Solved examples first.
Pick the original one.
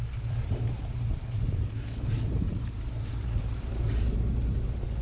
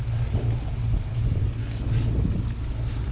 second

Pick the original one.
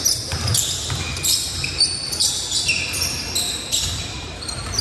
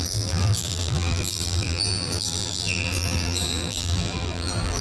first